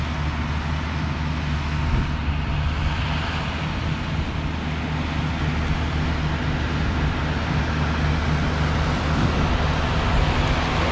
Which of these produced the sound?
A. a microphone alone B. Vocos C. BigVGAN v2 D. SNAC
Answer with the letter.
A